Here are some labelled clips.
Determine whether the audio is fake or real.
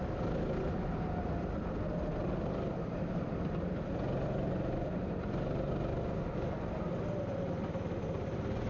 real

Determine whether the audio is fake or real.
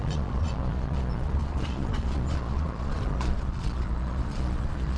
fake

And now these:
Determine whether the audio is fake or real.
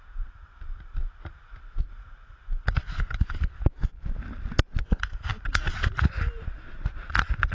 real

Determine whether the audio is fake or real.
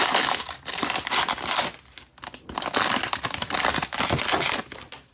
real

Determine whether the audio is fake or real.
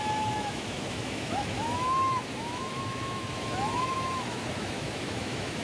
fake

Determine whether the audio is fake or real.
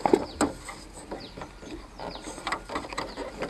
real